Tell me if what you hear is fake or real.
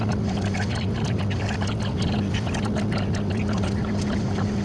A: real